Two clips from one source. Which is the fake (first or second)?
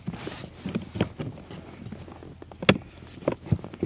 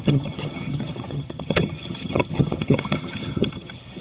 second